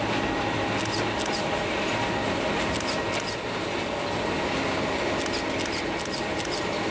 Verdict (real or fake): real